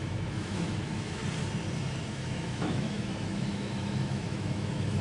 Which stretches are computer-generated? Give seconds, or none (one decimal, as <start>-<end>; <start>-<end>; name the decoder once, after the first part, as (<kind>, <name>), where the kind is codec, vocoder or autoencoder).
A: 0.0-1.2 (autoencoder, DAC-VAE); 2.1-5.0